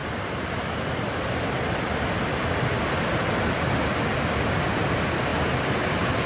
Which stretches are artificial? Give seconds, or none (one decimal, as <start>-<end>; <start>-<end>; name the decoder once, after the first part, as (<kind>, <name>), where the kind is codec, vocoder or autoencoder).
none